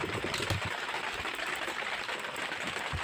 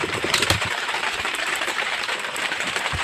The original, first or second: first